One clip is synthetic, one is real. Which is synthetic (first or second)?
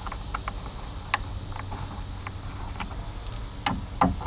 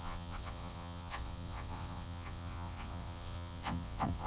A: second